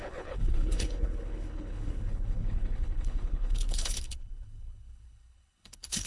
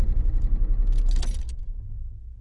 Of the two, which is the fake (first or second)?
first